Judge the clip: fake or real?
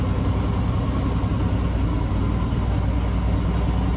real